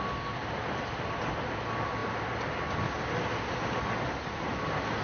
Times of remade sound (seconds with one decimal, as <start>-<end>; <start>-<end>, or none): none